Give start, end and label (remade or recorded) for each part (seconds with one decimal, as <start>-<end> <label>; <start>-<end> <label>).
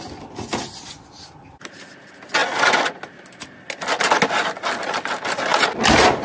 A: 0.0-6.2 recorded